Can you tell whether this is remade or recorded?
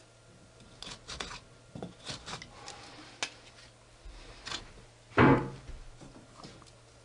recorded